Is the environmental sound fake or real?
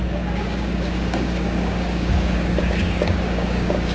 fake